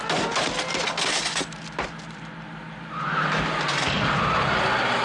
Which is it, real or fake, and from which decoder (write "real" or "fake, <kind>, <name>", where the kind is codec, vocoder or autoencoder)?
real